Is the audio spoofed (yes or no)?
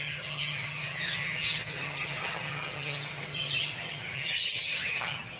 yes